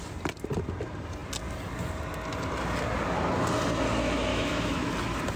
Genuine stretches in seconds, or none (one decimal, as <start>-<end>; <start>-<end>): 0.0-4.3; 4.9-5.4